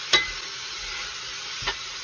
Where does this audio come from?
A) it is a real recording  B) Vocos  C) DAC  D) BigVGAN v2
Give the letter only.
A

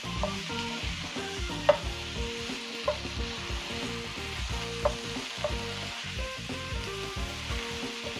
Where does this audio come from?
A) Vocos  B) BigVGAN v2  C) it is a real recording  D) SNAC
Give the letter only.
C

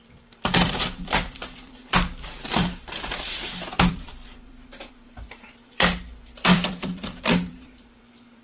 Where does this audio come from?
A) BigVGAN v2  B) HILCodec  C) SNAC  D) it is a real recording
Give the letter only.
A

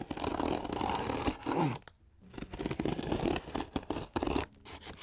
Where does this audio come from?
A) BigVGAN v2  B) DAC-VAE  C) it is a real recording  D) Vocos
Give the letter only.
C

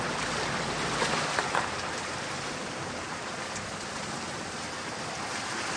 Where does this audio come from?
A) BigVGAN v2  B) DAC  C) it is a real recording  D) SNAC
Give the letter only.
C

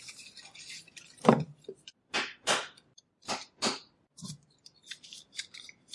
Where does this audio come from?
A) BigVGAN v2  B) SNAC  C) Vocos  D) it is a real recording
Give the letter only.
A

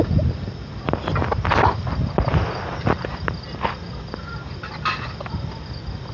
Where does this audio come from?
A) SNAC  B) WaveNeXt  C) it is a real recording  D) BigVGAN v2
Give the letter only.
C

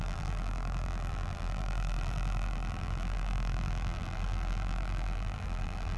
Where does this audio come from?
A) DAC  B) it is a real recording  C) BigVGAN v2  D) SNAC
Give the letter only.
C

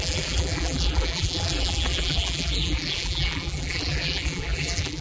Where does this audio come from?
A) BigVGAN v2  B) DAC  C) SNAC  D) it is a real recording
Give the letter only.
A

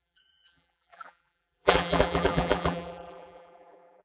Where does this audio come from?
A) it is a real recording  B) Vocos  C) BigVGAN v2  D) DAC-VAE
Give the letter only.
C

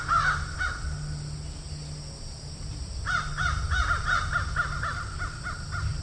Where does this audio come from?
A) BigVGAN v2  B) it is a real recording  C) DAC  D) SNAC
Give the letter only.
B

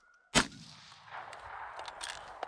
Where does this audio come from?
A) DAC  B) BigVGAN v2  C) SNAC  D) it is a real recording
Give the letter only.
D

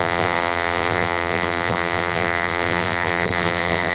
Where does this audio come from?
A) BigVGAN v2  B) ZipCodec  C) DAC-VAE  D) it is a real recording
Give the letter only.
A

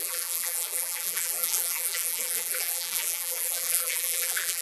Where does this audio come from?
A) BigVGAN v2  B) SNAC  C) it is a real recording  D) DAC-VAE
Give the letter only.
A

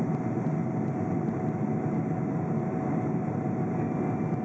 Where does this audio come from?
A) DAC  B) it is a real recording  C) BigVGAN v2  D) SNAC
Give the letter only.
B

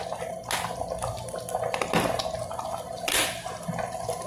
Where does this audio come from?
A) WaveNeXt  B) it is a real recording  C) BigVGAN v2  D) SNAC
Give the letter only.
B